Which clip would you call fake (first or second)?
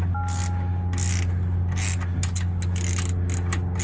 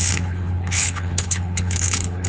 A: second